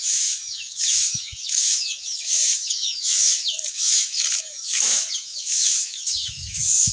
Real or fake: fake